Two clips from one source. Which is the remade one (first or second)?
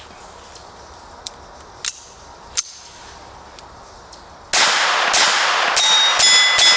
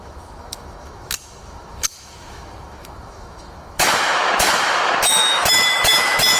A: second